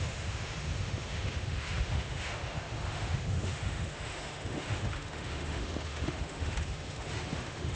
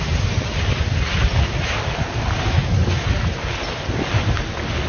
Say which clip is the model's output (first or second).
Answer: first